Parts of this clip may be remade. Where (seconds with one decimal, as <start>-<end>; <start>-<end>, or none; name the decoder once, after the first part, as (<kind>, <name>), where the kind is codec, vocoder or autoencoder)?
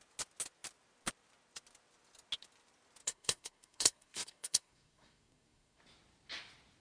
3.0-5.8 (codec, SNAC)